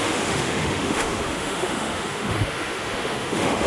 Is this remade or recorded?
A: remade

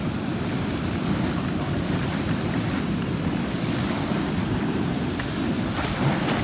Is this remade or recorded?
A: recorded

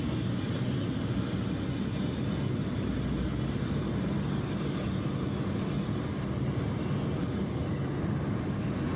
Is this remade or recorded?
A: recorded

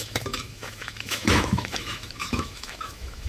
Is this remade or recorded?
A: remade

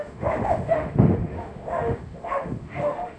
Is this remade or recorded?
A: remade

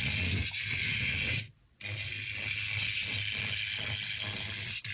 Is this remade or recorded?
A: recorded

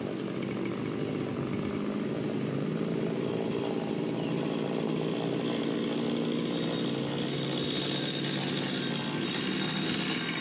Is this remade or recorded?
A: recorded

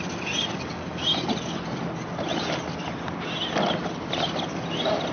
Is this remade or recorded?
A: recorded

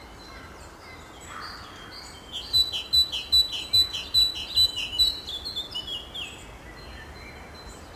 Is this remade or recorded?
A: recorded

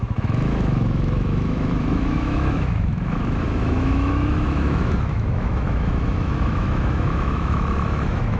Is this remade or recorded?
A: remade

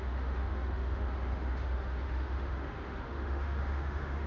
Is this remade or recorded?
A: remade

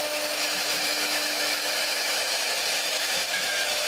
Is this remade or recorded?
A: remade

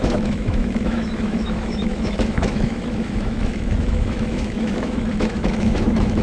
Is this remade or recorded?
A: remade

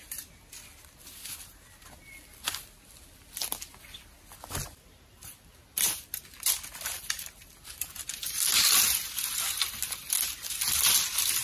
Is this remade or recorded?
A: recorded